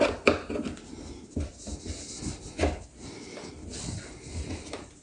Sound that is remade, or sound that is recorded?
recorded